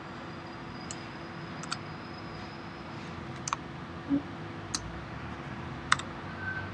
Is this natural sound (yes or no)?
yes